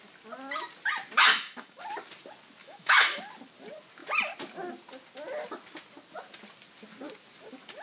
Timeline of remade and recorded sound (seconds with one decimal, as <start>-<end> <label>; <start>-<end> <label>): 0.0-1.3 recorded; 1.3-1.8 remade; 1.8-2.6 recorded; 2.6-3.2 remade; 3.2-7.8 recorded